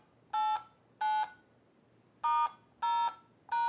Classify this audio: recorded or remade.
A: recorded